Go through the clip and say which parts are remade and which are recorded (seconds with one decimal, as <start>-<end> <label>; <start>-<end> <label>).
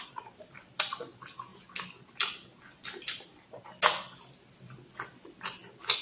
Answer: 0.0-6.0 recorded